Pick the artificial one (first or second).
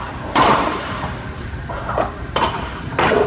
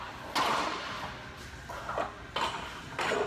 first